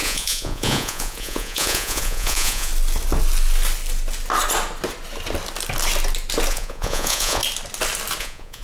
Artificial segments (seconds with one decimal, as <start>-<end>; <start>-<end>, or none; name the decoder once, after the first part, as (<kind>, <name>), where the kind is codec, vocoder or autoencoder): 0.0-2.7 (vocoder, Vocos); 6.5-7.4; 8.2-8.6